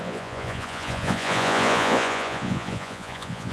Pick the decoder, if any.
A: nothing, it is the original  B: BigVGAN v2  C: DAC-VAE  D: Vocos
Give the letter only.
D